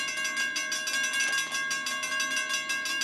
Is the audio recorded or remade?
recorded